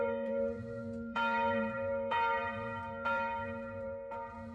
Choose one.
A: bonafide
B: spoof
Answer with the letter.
B